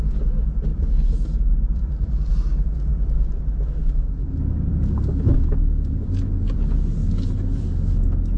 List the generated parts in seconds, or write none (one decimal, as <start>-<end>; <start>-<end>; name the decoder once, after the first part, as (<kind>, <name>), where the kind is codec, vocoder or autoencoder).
0.7-2.3 (vocoder, BigVGAN v2); 2.9-3.4

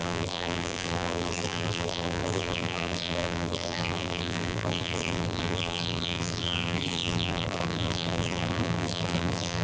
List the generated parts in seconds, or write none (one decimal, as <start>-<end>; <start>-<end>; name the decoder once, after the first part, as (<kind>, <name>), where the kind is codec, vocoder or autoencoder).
0.0-9.6 (vocoder, BigVGAN v2)